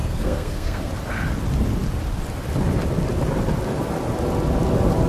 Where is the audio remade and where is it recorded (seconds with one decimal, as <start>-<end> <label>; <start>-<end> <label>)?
0.0-0.9 remade; 0.9-5.1 recorded